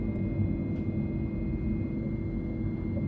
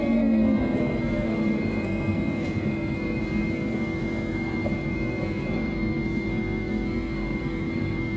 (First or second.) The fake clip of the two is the second